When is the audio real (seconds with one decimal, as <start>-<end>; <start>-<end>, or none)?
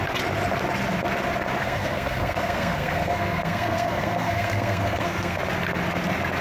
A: 0.0-1.6; 5.4-6.4